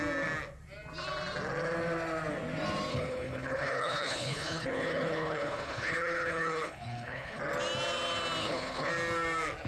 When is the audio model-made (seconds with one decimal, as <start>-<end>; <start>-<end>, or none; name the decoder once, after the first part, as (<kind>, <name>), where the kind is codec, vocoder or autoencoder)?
2.9-7.4 (codec, HILCodec); 8.4-8.9